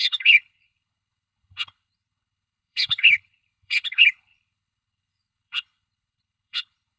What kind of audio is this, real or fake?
fake